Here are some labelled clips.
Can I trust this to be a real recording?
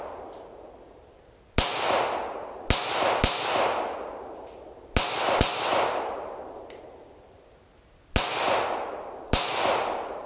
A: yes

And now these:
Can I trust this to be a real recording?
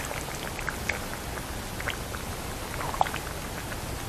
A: yes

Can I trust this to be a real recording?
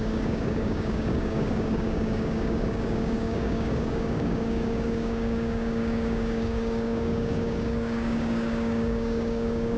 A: no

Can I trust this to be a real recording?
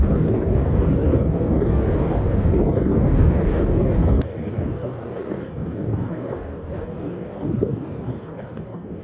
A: no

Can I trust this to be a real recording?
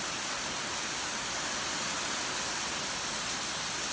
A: yes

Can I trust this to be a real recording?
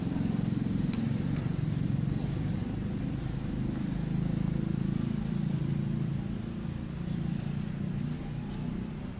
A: yes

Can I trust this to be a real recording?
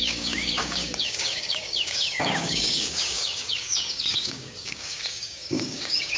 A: no